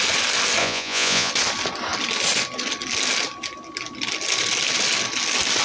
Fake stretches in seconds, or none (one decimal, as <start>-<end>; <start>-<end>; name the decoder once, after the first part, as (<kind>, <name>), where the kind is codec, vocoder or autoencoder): 0.6-1.3 (vocoder, Vocos)